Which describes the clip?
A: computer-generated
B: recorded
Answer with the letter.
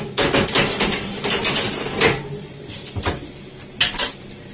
B